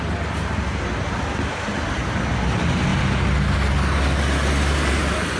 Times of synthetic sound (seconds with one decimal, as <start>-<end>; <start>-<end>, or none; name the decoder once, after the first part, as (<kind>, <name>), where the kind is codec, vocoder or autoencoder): none